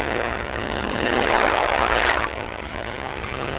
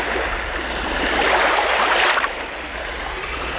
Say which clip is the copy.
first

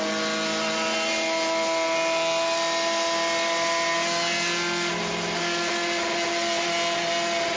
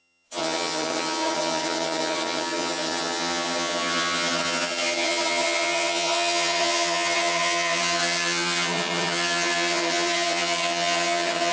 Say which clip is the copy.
second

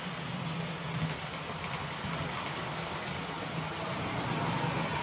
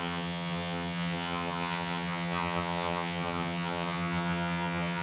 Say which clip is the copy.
second